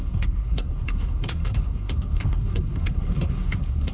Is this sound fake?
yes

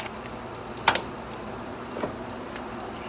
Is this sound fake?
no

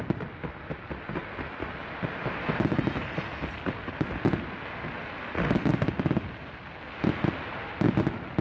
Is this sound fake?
no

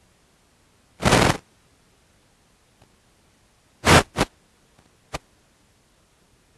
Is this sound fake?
no